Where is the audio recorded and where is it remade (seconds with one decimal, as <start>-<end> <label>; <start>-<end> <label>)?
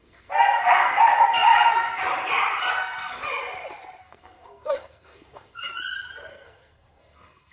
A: 0.0-2.0 remade; 2.0-2.7 recorded; 2.7-3.2 remade; 3.2-4.0 recorded; 4.0-5.7 remade; 5.7-6.3 recorded; 6.3-7.5 remade